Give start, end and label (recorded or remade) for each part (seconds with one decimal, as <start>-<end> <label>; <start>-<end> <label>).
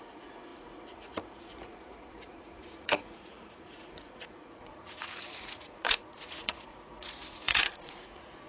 0.0-8.5 remade